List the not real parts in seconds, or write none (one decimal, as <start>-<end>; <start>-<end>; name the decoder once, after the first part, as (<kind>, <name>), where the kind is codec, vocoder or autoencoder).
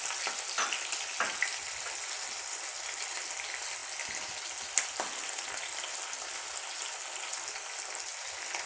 none